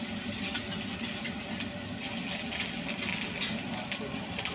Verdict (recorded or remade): recorded